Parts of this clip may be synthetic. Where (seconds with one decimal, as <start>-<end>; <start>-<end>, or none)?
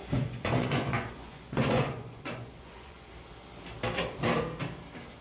0.0-3.1